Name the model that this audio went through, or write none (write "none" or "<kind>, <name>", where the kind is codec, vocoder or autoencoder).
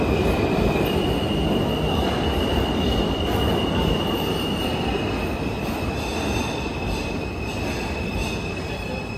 none